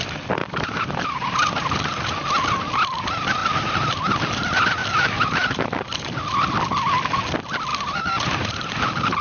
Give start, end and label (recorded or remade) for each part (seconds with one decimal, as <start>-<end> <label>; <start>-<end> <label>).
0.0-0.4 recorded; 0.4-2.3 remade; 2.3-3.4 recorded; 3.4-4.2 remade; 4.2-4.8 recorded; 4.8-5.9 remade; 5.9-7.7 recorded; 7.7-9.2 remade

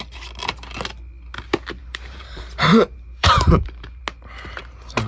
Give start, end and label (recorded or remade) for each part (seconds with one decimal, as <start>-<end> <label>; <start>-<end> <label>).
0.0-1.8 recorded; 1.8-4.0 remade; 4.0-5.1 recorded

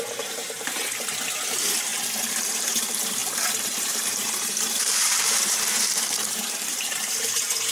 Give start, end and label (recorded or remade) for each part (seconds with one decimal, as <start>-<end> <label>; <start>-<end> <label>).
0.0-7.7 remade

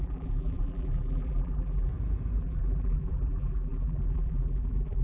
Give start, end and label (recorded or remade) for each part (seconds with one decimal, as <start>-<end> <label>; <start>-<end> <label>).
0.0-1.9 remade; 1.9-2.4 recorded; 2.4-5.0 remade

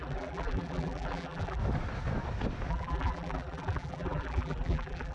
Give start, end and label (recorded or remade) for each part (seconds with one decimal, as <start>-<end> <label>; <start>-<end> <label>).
0.0-1.6 remade; 1.6-2.7 recorded; 2.7-5.1 remade

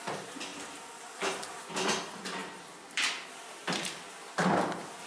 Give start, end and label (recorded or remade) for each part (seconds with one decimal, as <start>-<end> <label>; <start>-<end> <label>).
0.0-2.4 recorded; 2.4-4.5 remade; 4.5-5.1 recorded